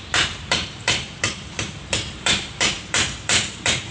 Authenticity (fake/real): fake